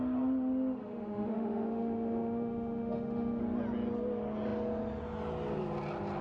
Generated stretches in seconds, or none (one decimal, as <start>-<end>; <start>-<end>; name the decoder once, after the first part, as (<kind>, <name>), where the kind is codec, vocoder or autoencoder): 0.8-3.4 (autoencoder, DAC-VAE)